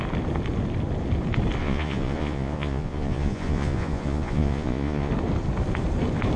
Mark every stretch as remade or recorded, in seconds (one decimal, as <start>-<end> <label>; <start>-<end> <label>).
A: 0.0-1.6 recorded; 1.6-5.1 remade; 5.1-6.4 recorded